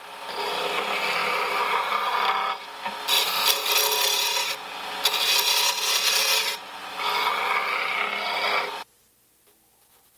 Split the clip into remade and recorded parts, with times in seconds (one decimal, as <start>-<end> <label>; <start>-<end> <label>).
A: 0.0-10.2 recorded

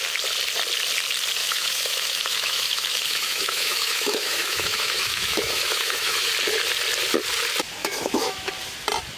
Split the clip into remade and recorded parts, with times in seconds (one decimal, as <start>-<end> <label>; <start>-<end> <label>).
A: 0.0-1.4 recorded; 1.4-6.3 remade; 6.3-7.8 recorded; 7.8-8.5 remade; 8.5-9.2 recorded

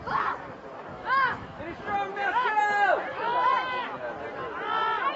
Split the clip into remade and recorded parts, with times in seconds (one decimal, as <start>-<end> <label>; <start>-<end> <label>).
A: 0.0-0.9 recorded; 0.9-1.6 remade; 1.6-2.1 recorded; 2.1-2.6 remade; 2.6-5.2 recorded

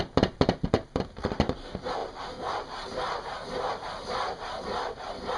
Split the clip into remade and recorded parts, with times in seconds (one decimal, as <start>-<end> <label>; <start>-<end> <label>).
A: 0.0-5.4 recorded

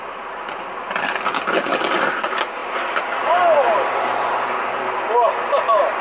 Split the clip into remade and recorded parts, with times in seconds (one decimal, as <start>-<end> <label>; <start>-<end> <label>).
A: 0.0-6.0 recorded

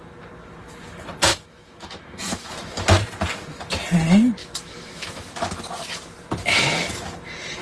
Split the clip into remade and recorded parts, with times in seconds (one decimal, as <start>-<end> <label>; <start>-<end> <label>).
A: 0.0-1.3 recorded; 1.3-2.5 remade; 2.5-4.4 recorded; 4.4-5.3 remade; 5.3-7.6 recorded